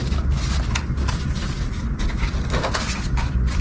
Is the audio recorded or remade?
recorded